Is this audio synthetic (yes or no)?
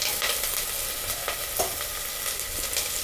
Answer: no